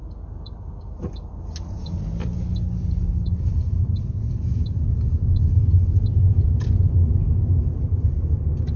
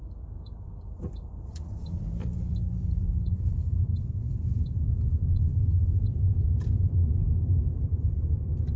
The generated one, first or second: second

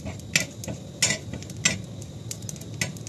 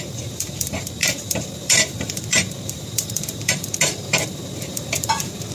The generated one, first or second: second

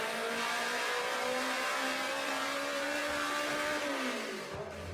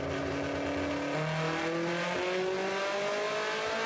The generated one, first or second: first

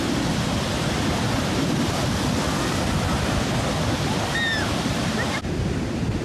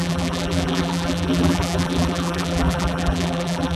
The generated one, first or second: second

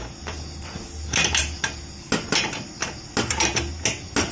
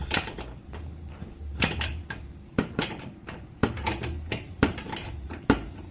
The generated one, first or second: second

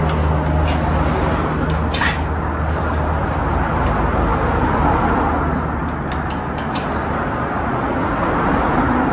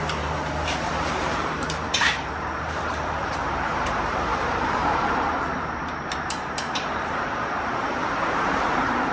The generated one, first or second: second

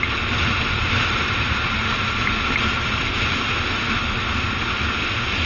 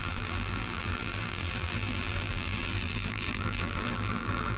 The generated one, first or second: second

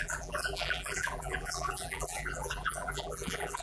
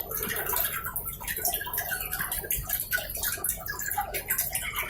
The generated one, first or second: first